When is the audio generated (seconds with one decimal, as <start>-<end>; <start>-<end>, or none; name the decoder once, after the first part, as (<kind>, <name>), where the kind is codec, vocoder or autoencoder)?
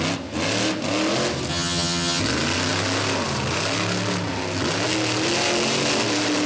1.5-2.2 (vocoder, HiFi-GAN)